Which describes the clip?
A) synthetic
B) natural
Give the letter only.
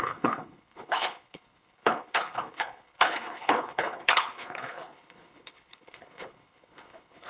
A